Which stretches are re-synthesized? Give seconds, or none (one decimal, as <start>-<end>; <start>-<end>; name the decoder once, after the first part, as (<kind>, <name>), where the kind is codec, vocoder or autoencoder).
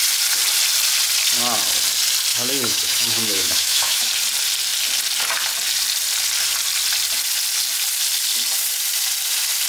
2.3-4.1 (autoencoder, DAC-VAE)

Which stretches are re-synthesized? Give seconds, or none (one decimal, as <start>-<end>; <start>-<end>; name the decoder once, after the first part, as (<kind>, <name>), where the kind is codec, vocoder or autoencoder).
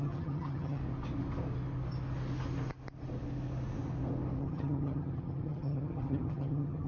0.0-0.8 (vocoder, HiFi-GAN); 4.4-6.9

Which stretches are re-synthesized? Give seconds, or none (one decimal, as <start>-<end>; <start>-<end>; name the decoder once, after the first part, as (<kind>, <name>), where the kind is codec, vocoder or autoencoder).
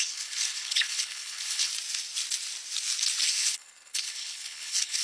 0.0-1.7 (codec, HILCodec); 3.3-5.0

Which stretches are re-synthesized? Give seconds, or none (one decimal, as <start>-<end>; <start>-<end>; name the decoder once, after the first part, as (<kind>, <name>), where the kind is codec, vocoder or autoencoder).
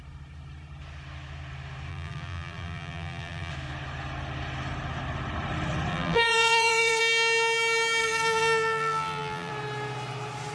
1.9-3.5 (vocoder, BigVGAN v2); 5.9-7.0; 8.0-9.5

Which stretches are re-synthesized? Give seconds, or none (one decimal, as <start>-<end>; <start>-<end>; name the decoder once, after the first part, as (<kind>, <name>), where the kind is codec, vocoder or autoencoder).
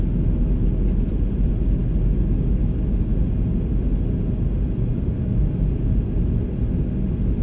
none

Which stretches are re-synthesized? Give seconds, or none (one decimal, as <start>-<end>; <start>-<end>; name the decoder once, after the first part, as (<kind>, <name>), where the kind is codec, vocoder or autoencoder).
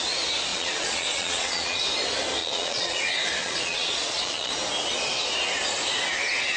0.5-1.8 (vocoder, Vocos); 2.4-3.0; 3.4-4.5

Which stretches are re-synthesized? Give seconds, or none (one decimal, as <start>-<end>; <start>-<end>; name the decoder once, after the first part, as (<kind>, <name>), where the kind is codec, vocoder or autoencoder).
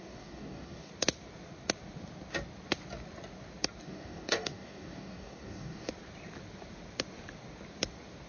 0.0-0.9 (codec, DAC); 3.8-5.9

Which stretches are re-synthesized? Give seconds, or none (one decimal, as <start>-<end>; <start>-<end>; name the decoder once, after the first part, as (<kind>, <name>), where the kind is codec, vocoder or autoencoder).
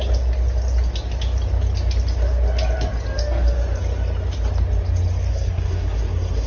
5.3-6.5 (codec, SNAC)